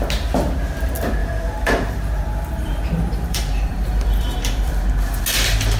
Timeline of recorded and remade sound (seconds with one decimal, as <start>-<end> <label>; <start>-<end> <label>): 0.0-1.2 recorded; 1.2-4.7 remade; 4.7-5.8 recorded